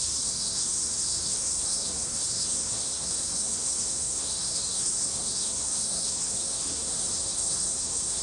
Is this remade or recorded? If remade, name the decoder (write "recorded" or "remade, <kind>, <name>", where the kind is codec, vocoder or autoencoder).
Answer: remade, codec, SNAC